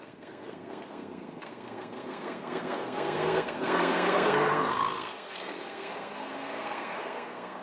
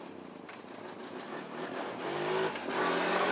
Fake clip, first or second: first